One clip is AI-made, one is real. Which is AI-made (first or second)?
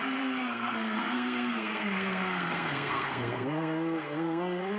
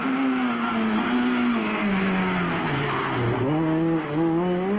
first